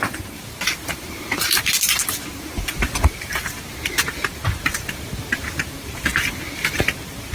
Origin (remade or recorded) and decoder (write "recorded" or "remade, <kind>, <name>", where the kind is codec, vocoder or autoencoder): remade, vocoder, BigVGAN v2